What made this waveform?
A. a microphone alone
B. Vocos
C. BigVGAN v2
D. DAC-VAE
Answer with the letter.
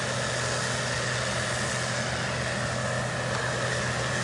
A